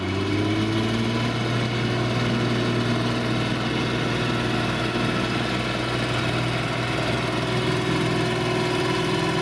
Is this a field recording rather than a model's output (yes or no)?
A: yes